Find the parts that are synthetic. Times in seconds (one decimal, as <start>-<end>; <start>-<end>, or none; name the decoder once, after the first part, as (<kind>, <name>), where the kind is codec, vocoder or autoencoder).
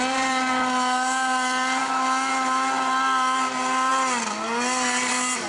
1.8-2.3 (autoencoder, DAC-VAE)